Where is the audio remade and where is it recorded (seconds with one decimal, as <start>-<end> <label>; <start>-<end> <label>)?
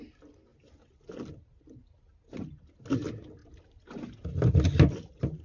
0.0-5.4 recorded